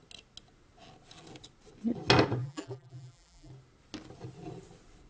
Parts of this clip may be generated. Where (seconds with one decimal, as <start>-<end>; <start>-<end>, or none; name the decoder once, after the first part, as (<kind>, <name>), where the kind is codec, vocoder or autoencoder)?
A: 2.4-3.5 (vocoder, BigVGAN v2)